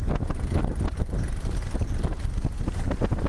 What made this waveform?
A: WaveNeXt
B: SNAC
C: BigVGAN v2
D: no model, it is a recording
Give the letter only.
D